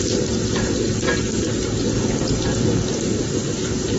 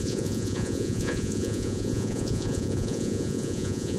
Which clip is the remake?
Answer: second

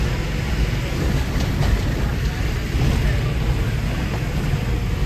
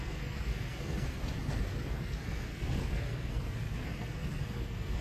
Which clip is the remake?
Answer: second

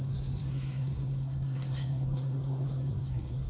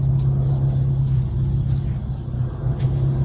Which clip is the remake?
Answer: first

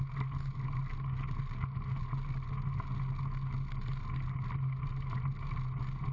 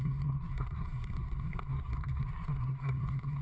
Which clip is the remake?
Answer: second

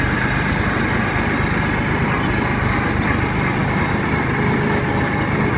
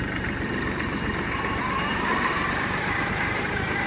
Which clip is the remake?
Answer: second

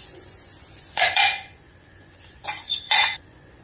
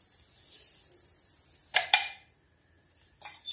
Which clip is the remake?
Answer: first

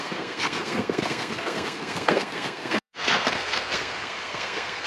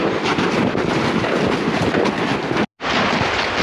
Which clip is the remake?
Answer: first